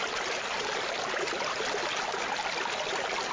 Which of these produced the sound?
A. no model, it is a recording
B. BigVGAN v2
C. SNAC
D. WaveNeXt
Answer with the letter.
A